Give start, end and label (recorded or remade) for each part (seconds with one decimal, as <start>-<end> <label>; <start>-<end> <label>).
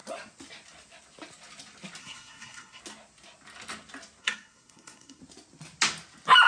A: 0.0-2.0 recorded; 2.0-2.8 remade; 2.8-4.2 recorded; 4.2-5.2 remade; 5.2-6.5 recorded